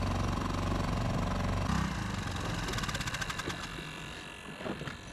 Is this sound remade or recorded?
recorded